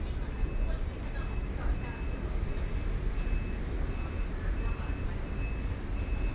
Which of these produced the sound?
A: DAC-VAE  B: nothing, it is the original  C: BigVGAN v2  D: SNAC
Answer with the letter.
B